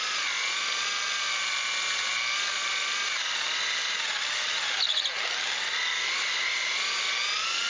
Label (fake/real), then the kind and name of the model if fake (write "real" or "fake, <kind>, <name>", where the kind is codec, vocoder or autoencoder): real